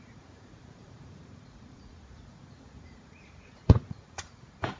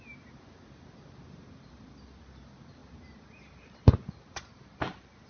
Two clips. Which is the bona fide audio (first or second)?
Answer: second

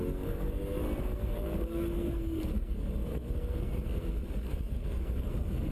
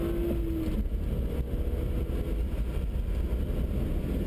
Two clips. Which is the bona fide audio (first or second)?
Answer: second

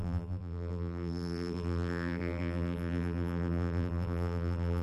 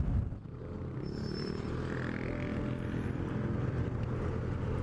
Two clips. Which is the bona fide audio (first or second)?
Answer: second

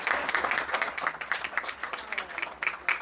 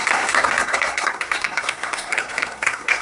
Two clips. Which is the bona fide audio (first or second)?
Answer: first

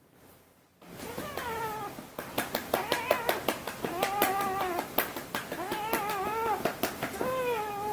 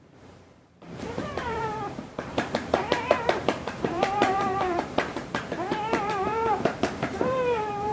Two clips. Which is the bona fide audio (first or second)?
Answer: first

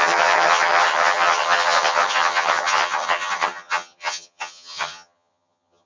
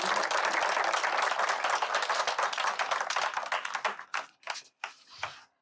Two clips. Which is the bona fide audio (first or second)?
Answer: second